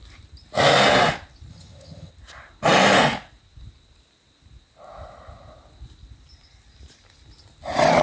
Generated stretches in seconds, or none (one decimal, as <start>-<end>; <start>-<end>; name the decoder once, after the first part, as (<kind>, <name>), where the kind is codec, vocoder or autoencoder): 1.5-2.1 (vocoder, HiFi-GAN)